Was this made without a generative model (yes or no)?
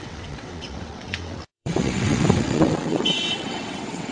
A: no